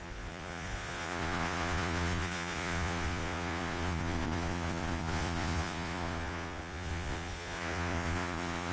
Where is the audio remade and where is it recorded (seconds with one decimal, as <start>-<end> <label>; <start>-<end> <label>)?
0.0-8.7 remade